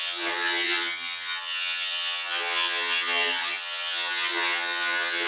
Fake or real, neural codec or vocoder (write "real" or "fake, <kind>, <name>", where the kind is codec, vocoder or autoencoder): fake, vocoder, HiFi-GAN